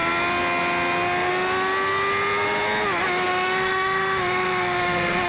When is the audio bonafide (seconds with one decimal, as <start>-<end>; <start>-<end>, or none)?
0.0-3.3